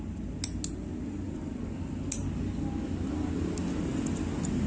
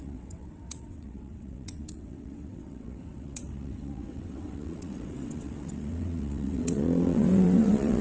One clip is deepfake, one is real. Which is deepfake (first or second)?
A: second